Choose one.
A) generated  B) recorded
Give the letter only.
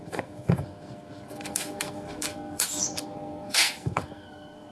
A